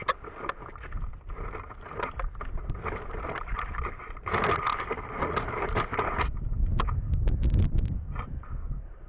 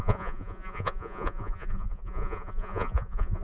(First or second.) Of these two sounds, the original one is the first